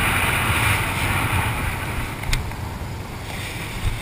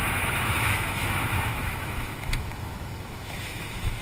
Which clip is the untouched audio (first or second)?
first